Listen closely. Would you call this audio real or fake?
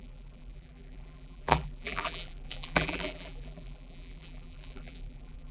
fake